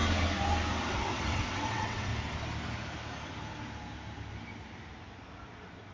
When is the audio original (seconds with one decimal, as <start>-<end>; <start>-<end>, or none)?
0.0-0.9; 2.1-5.9